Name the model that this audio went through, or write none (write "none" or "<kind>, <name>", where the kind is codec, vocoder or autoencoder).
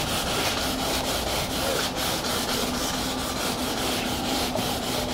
none